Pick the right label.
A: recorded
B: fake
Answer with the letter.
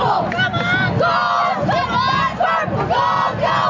A